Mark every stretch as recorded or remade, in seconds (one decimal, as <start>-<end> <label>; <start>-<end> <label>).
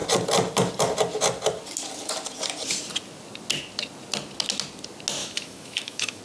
0.0-5.2 recorded; 5.2-6.2 remade